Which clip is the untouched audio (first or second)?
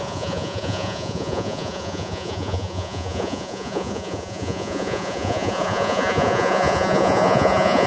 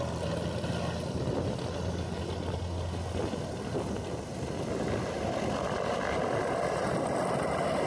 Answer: second